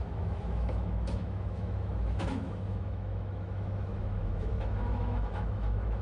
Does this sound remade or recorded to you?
remade